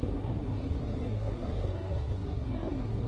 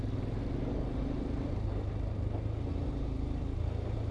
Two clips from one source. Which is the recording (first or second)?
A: second